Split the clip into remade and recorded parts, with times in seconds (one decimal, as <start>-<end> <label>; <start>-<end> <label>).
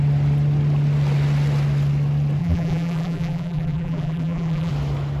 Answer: 0.0-2.4 recorded; 2.4-4.7 remade; 4.7-5.2 recorded